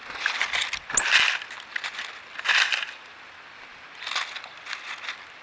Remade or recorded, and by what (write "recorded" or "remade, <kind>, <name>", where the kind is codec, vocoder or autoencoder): recorded